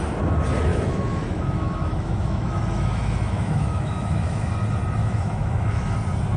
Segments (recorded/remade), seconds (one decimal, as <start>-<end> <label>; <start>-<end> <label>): 0.0-0.7 recorded; 0.7-4.5 remade; 4.5-5.0 recorded; 5.0-6.0 remade; 6.0-6.4 recorded